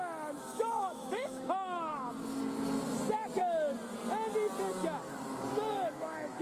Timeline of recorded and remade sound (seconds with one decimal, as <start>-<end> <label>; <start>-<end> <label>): 0.0-1.9 remade; 1.9-5.7 recorded; 5.7-6.4 remade